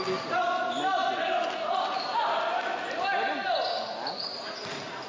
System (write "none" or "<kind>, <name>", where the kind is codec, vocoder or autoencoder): none